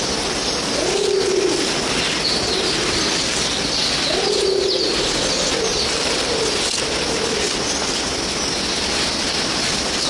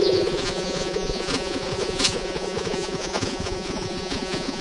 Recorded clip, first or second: first